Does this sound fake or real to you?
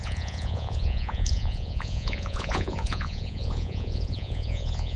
fake